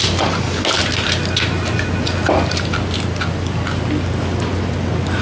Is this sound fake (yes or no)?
no